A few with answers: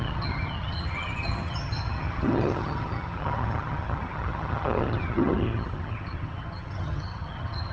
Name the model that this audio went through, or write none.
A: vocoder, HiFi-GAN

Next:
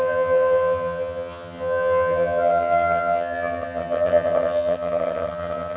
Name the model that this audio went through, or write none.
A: vocoder, HiFi-GAN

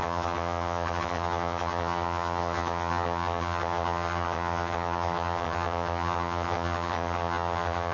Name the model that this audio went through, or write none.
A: vocoder, HiFi-GAN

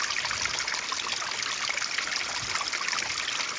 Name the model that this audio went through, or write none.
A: none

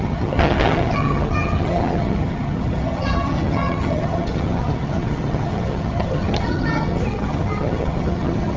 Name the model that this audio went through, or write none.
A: vocoder, HiFi-GAN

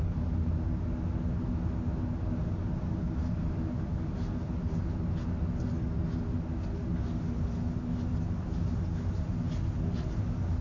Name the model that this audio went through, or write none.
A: none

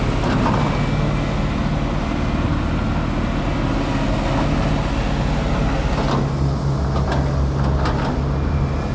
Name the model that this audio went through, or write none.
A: none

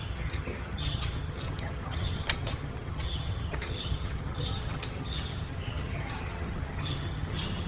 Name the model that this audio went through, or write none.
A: vocoder, HiFi-GAN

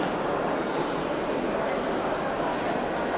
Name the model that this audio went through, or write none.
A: none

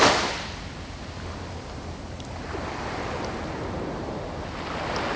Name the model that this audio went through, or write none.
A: none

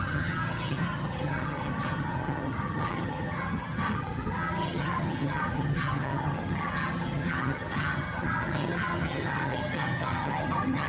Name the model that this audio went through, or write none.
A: vocoder, HiFi-GAN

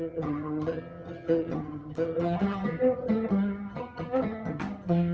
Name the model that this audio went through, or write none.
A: vocoder, HiFi-GAN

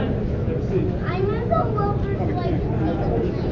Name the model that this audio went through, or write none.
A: none